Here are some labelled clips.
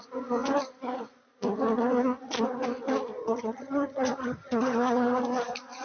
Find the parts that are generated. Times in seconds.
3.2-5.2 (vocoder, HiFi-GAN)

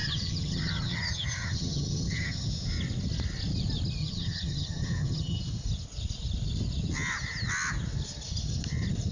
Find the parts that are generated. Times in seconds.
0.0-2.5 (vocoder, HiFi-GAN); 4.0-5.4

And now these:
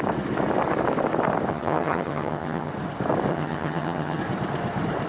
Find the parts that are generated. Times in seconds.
1.5-2.7 (vocoder, HiFi-GAN); 3.3-4.2

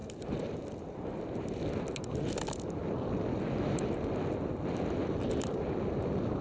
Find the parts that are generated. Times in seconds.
none

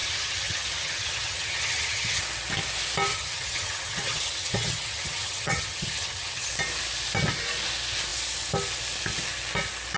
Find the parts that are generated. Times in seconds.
0.0-2.2 (vocoder, HiFi-GAN); 3.1-6.5

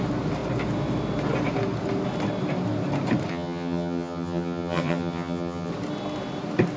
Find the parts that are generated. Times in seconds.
3.3-5.7 (vocoder, HiFi-GAN)

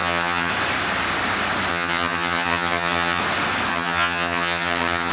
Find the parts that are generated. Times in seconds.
0.0-0.5 (vocoder, HiFi-GAN); 1.7-3.2; 3.7-5.1

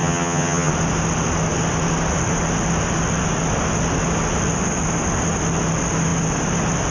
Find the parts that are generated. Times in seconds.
0.0-0.7 (vocoder, HiFi-GAN)